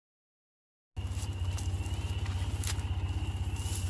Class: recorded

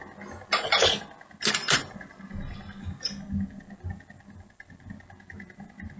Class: recorded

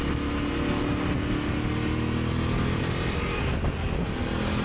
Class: recorded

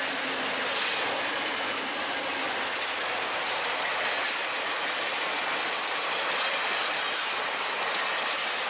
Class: recorded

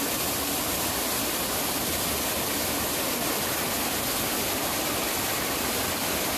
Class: remade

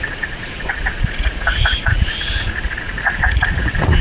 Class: remade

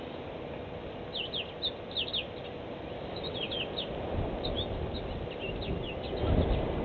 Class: recorded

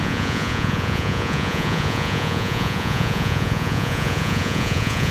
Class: remade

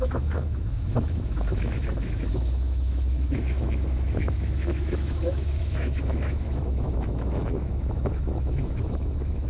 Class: remade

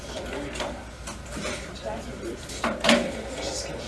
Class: remade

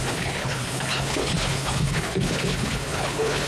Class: remade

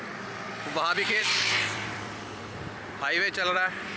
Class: remade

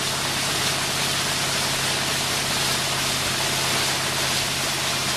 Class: recorded